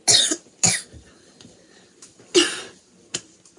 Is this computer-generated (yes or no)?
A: no